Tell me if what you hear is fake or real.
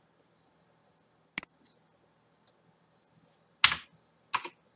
real